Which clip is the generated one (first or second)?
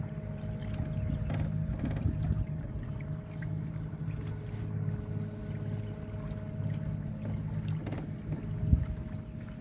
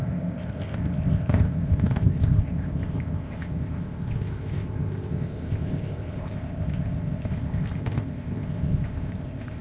second